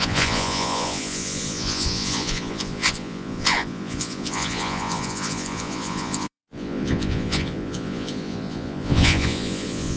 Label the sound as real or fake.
fake